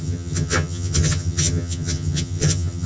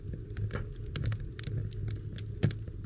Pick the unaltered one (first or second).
second